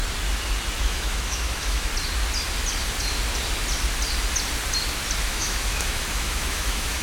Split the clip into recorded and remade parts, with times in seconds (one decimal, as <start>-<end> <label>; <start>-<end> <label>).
0.0-0.8 recorded; 0.8-1.9 remade; 1.9-5.2 recorded; 5.2-7.0 remade